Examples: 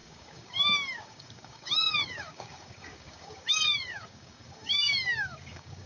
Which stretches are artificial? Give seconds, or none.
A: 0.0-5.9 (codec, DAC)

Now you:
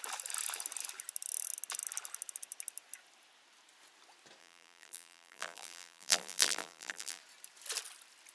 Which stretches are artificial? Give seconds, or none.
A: 4.4-7.2 (vocoder, BigVGAN v2)